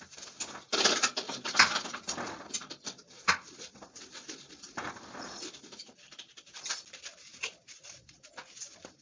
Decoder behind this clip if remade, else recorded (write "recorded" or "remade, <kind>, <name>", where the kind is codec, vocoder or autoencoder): remade, vocoder, BigVGAN v2